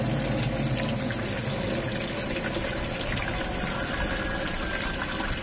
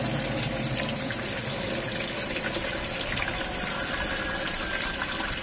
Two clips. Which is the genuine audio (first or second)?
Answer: first